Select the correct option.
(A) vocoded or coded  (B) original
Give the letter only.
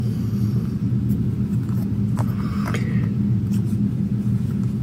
B